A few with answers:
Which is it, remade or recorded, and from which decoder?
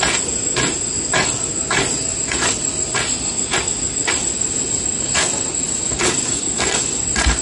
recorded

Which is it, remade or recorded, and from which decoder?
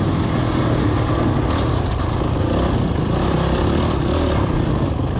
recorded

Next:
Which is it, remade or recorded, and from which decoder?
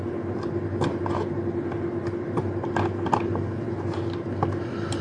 recorded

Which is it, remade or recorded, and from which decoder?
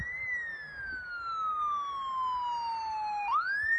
recorded